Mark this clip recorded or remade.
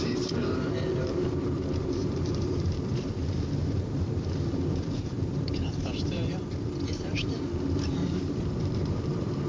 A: remade